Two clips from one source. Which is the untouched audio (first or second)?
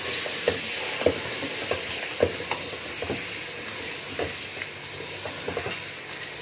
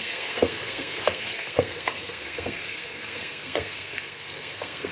first